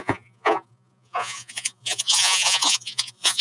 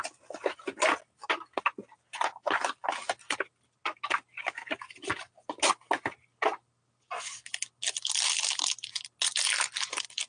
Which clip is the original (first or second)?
second